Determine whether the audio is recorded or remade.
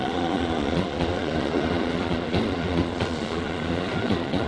remade